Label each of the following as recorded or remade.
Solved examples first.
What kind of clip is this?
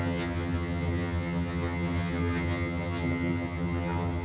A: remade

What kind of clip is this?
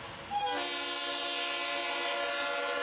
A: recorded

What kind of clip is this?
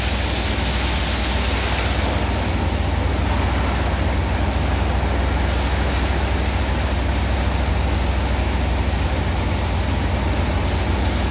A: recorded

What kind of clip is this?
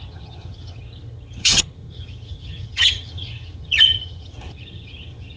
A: remade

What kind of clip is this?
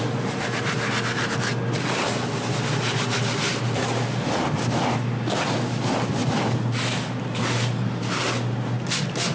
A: recorded